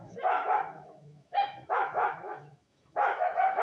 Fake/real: fake